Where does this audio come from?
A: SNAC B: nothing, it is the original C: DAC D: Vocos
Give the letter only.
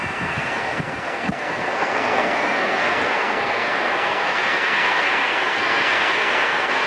A